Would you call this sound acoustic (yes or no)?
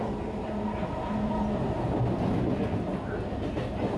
yes